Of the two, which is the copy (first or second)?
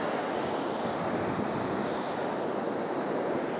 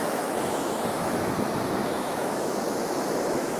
second